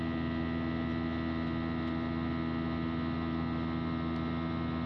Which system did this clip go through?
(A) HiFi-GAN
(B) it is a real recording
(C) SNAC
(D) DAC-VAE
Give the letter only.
B